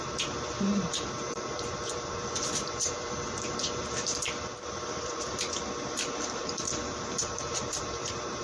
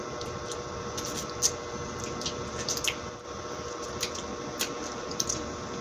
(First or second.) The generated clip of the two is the first